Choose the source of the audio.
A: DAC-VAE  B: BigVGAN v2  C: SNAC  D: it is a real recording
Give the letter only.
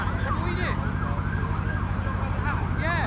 D